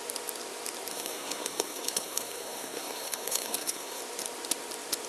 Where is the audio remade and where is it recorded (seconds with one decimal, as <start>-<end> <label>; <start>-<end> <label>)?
0.0-0.9 recorded; 0.9-4.0 remade; 4.0-5.1 recorded

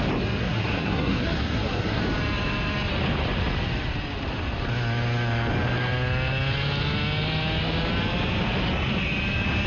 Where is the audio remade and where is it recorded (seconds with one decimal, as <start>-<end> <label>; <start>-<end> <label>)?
0.0-0.4 recorded; 0.4-2.0 remade; 2.0-9.7 recorded

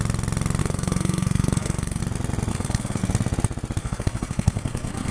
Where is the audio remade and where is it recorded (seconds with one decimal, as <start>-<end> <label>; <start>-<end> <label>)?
0.0-0.6 recorded; 0.6-2.0 remade; 2.0-2.5 recorded; 2.5-3.0 remade; 3.0-3.8 recorded; 3.8-5.1 remade

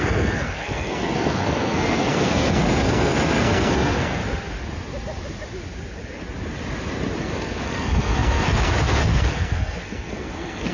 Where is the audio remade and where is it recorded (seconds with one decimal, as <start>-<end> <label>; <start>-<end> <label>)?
0.0-4.2 remade; 4.2-7.2 recorded; 7.2-10.7 remade

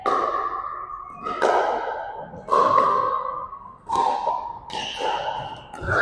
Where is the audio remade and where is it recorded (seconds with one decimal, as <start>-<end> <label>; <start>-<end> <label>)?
0.0-2.9 recorded; 2.9-4.3 remade; 4.3-6.0 recorded

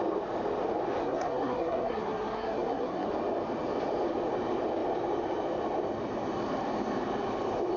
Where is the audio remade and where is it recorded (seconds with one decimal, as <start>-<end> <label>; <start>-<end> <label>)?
0.0-1.0 recorded; 1.0-3.1 remade; 3.1-7.8 recorded